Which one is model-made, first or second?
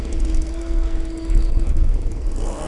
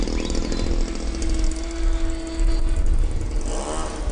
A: first